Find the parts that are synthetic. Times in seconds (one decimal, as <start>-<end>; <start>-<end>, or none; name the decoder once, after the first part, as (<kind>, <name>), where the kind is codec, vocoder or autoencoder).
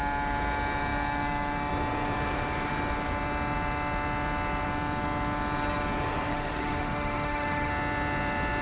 6.3-7.7 (autoencoder, DAC-VAE)